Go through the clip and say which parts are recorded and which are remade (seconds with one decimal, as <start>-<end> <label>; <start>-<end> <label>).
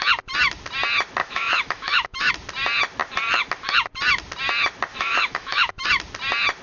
0.0-1.2 recorded; 1.2-2.3 remade; 2.3-4.9 recorded; 4.9-5.9 remade; 5.9-6.6 recorded